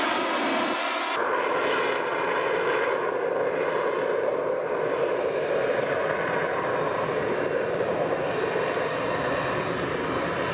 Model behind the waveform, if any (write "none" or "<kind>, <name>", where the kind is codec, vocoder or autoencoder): none